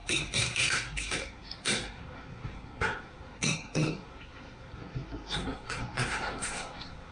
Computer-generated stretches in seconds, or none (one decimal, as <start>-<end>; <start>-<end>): 0.0-7.1